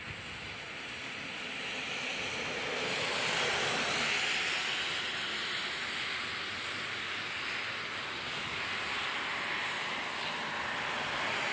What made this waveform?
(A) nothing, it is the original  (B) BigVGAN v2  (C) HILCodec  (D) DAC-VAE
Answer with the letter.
A